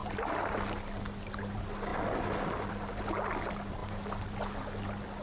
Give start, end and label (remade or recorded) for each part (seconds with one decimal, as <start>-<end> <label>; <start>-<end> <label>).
0.0-5.2 recorded